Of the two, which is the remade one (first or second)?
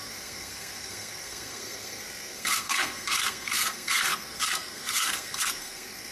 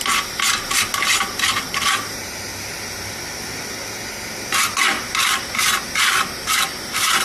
first